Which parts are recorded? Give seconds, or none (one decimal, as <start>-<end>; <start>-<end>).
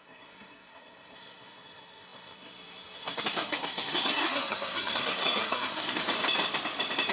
6.0-7.1